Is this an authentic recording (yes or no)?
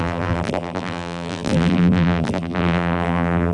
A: no